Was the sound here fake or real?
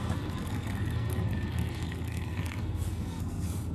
fake